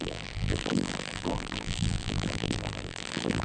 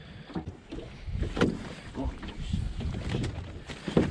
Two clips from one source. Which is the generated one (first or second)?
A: first